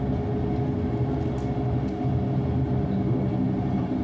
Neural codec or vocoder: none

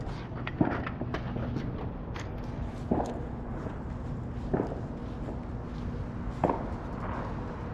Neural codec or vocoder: none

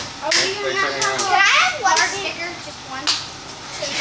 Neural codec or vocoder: none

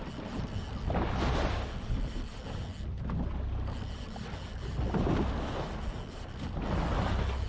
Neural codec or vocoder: none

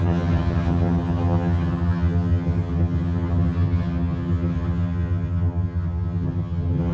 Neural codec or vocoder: vocoder, HiFi-GAN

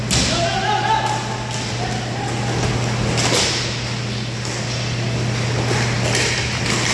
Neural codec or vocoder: none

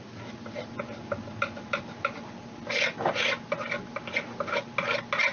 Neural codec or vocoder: none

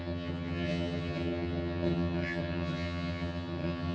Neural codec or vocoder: vocoder, HiFi-GAN